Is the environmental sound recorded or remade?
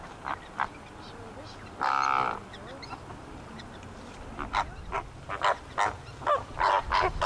recorded